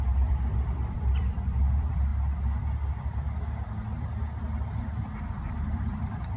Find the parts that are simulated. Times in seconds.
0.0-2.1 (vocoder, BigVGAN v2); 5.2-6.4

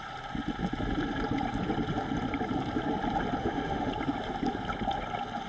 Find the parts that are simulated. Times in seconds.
3.4-3.9 (autoencoder, DAC-VAE)